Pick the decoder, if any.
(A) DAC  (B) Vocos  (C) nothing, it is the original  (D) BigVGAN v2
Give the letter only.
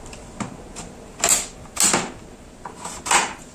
C